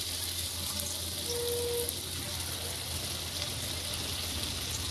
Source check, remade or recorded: recorded